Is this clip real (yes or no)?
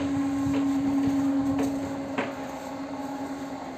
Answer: yes